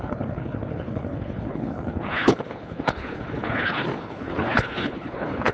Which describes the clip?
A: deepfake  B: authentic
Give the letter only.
A